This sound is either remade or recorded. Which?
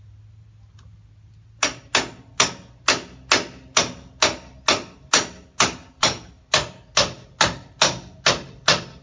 recorded